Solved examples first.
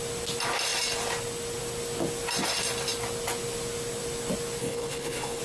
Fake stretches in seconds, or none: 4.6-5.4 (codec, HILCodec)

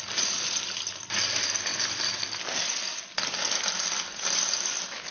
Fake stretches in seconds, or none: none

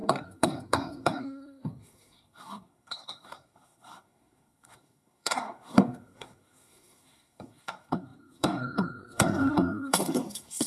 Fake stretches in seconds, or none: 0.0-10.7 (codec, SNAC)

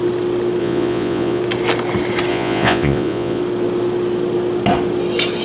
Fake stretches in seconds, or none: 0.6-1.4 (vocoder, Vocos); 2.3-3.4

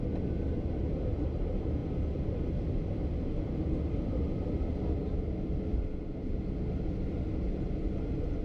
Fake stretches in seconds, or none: none

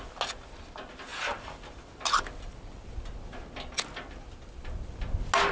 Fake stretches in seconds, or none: none